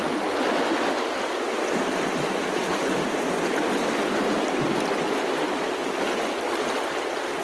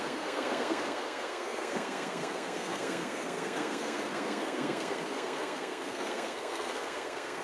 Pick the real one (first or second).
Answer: first